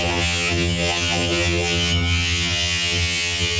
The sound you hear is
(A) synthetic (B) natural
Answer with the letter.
A